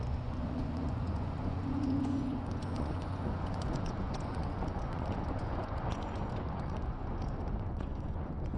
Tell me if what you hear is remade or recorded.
remade